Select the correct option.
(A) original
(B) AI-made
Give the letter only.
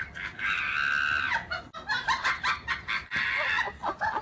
A